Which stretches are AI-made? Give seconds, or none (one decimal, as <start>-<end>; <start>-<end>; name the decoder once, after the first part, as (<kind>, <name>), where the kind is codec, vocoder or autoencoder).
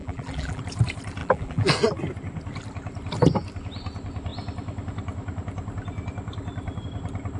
0.0-0.6 (vocoder, BigVGAN v2); 1.2-1.7